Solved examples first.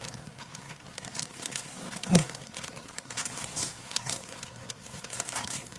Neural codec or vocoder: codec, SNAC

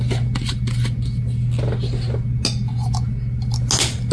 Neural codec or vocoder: none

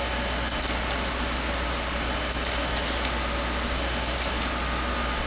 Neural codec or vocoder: none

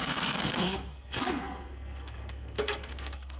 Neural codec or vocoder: codec, SNAC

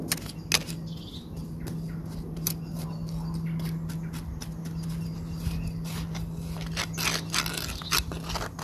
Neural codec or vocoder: none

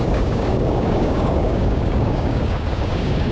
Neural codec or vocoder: codec, DAC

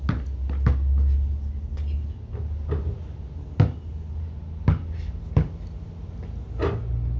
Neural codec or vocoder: none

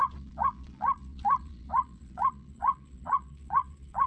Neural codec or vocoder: vocoder, Vocos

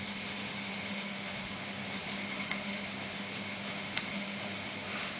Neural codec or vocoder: autoencoder, DAC-VAE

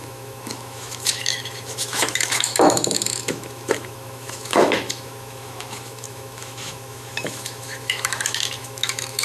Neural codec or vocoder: autoencoder, DAC-VAE